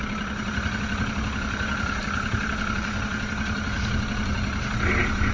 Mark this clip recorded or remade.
recorded